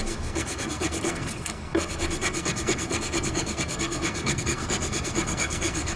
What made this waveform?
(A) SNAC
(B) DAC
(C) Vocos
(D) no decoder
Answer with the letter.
A